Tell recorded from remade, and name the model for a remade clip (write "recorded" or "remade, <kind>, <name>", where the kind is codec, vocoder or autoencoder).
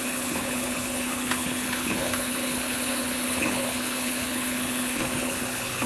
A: remade, codec, HILCodec